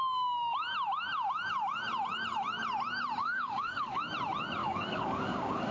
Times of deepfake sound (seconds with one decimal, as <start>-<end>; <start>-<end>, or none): 3.2-4.0; 4.6-5.7

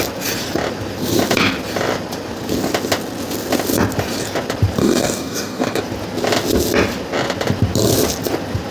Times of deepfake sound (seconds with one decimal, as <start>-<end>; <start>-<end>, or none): 4.8-5.8

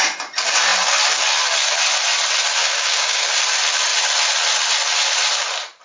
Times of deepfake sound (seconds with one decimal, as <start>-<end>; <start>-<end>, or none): 2.6-3.3

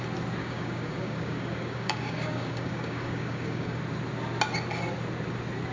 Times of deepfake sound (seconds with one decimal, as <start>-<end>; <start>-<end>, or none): 0.4-3.8

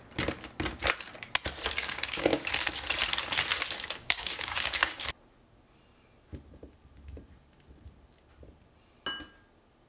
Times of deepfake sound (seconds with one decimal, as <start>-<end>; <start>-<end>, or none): 1.8-2.5; 4.0-5.1